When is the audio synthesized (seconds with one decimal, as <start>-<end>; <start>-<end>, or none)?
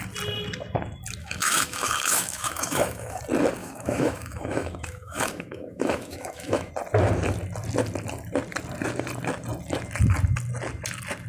1.2-3.2; 3.6-6.7